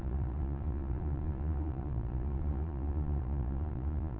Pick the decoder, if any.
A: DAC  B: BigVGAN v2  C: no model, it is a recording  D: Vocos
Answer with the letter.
D